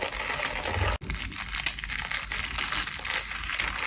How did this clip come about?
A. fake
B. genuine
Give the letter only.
B